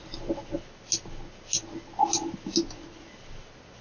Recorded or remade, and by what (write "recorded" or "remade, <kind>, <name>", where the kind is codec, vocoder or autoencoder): recorded